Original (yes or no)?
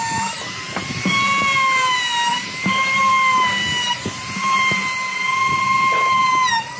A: no